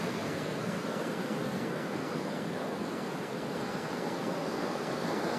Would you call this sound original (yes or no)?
no